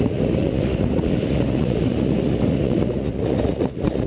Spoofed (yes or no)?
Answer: yes